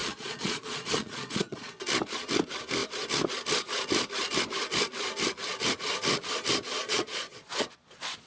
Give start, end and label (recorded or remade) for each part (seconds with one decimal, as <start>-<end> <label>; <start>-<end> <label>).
0.0-1.8 remade; 1.8-6.7 recorded; 6.7-8.3 remade